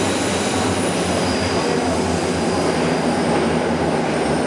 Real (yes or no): no